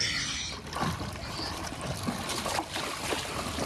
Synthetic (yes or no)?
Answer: no